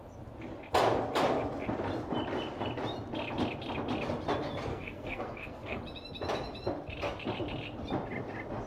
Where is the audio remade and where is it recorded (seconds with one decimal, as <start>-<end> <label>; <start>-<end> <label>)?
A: 0.0-4.7 recorded; 4.7-5.8 remade; 5.8-8.7 recorded